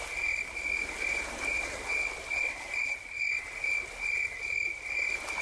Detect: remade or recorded recorded